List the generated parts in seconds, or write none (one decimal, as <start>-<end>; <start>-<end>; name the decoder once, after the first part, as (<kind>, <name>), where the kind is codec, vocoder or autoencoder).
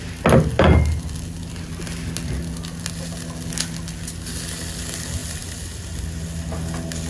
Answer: 5.2-5.8 (vocoder, BigVGAN v2)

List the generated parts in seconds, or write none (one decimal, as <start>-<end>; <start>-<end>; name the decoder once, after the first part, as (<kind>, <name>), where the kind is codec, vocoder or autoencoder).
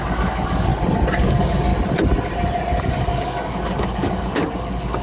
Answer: 0.0-0.7 (codec, DAC); 1.2-1.7; 2.9-5.0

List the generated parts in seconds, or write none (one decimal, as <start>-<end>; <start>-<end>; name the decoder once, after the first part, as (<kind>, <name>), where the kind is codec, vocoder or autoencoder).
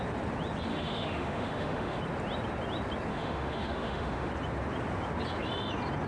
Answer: 0.7-2.0 (autoencoder, DAC-VAE); 3.1-4.3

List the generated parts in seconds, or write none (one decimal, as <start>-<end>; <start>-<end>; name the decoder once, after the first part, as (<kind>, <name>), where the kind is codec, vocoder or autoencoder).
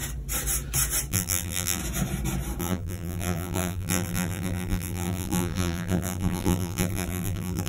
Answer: 1.1-1.8 (vocoder, BigVGAN v2); 2.6-7.7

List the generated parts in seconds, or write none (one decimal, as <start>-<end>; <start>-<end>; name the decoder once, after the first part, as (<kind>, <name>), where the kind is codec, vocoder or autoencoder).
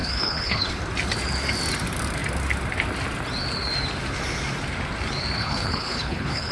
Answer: 0.0-0.8 (codec, HILCodec); 5.4-6.5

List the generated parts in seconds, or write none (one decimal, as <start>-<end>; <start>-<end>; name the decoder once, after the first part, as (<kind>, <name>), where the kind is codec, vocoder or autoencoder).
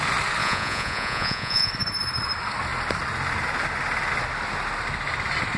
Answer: 0.4-1.7 (vocoder, Vocos)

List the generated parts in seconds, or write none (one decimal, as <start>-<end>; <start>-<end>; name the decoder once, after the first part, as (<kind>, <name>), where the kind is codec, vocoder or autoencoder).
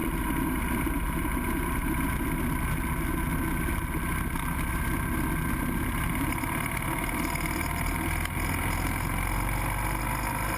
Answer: none